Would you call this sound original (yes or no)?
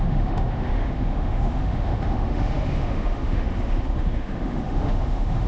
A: no